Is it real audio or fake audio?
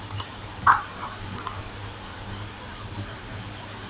fake